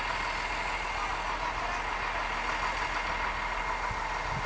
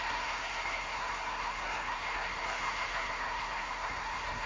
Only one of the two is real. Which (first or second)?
first